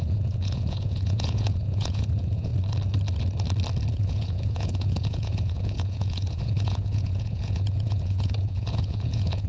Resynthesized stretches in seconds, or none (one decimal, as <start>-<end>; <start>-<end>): 0.0-2.5; 3.9-9.5